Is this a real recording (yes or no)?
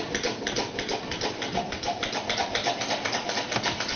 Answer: yes